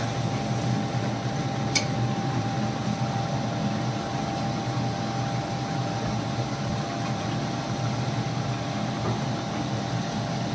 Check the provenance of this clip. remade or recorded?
recorded